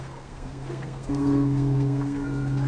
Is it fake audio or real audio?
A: fake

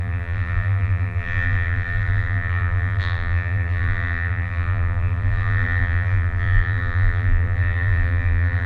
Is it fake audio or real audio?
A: fake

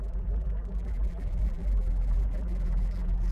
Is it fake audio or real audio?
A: fake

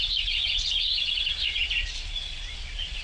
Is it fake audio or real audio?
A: fake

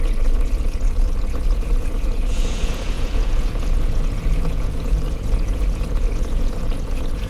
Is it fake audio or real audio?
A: fake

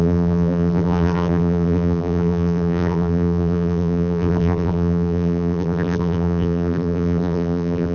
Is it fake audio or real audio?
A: fake